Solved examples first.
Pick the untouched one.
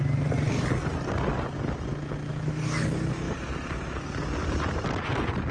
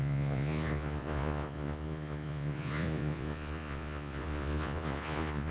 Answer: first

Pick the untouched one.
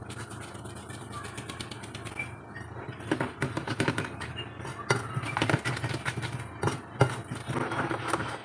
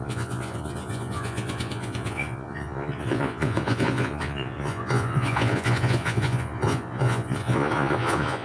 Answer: first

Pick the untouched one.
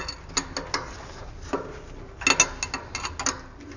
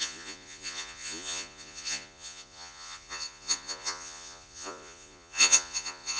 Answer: first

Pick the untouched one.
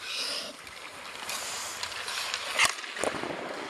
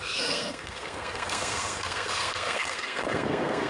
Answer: first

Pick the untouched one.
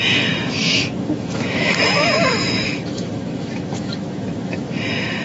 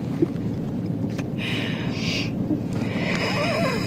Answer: second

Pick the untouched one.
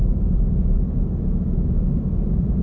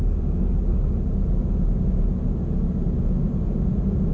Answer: second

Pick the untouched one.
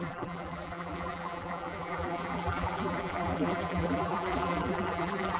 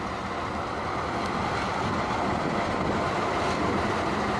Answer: second